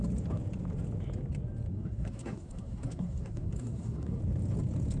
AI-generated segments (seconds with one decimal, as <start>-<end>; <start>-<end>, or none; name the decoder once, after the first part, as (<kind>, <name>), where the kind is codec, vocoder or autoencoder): 1.7-4.2 (codec, SNAC)